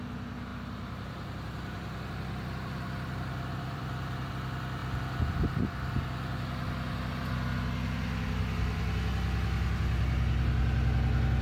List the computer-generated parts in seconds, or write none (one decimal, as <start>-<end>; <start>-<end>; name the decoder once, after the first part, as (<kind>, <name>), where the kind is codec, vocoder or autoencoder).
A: 0.5-4.3 (vocoder, BigVGAN v2)